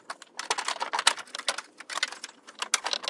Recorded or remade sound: recorded